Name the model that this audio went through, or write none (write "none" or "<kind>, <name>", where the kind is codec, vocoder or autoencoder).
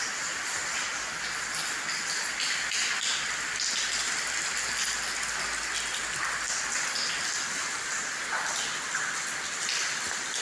none